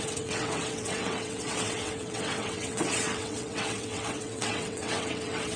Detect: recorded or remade remade